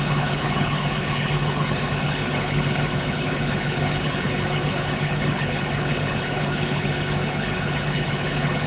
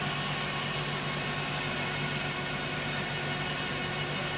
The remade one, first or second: first